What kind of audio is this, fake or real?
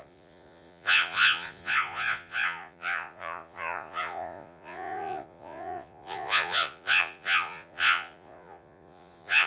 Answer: fake